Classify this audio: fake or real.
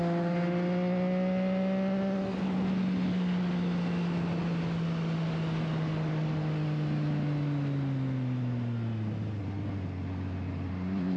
real